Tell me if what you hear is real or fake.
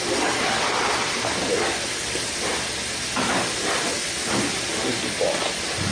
real